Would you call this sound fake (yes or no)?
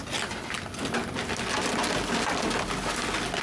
no